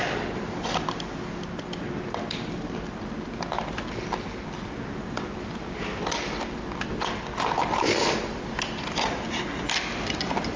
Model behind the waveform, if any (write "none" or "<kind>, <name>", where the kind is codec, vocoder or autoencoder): none